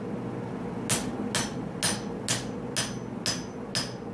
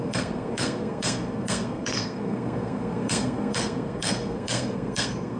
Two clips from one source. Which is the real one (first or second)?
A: first